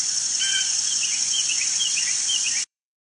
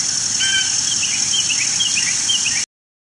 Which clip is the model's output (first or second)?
first